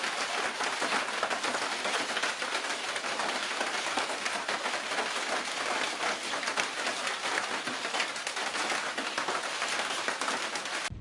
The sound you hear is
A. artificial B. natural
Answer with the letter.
B